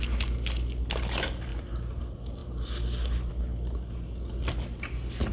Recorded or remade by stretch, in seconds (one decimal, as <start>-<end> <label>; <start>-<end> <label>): 0.0-1.5 recorded; 1.5-2.0 remade; 2.0-5.3 recorded